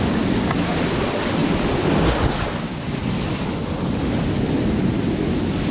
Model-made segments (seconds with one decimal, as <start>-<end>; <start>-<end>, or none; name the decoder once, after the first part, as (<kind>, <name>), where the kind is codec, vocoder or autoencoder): none